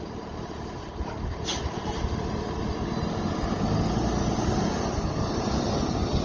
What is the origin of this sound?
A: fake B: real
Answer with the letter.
B